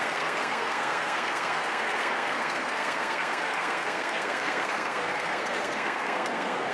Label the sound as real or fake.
fake